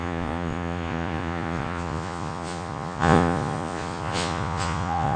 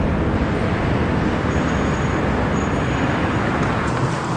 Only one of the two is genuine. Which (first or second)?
second